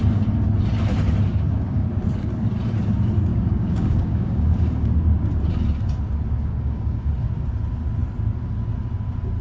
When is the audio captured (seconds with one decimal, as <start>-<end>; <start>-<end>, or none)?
0.0-1.3; 1.9-3.3; 4.9-6.5; 7.1-9.4